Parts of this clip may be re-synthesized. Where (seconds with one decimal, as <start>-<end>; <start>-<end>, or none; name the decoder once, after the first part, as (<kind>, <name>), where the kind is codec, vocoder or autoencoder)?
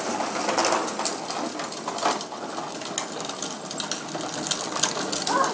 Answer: none